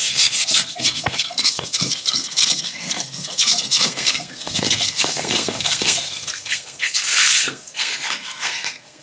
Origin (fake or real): fake